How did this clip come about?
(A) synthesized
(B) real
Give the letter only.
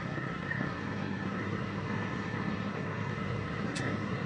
A